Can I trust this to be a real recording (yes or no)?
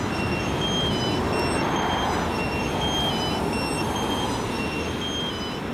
yes